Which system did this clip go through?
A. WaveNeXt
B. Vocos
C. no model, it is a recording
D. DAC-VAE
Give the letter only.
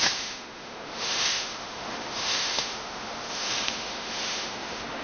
D